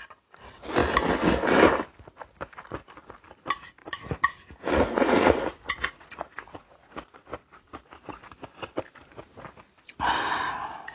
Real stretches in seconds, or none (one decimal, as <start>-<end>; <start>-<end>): 0.0-3.8; 8.2-10.9

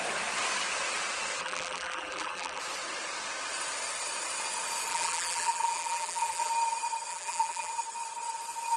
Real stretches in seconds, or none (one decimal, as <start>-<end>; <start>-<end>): 0.0-1.4; 2.6-4.9; 6.5-7.1; 7.7-8.8